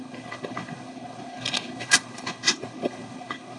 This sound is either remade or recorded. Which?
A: remade